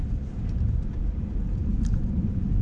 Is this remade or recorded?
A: recorded